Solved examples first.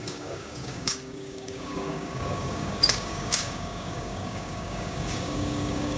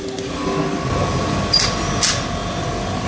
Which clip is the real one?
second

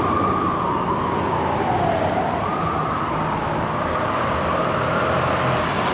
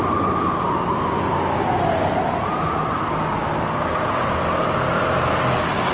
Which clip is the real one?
second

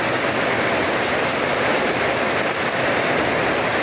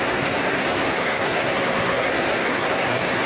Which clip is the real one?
first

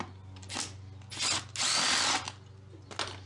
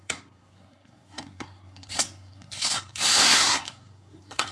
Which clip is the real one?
first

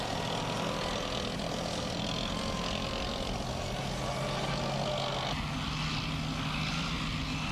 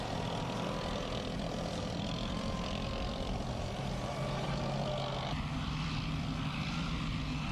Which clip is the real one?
first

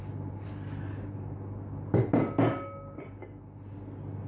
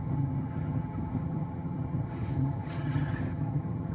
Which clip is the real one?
first